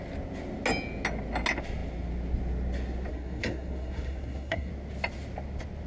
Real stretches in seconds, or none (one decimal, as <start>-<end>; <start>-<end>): 0.0-3.1; 4.7-5.9